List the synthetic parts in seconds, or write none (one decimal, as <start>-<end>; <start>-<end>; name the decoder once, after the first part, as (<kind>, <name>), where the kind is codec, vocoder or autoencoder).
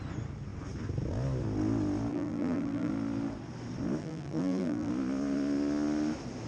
2.1-2.9 (vocoder, BigVGAN v2); 4.0-4.9